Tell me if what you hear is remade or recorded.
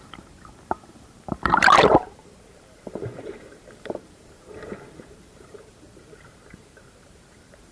remade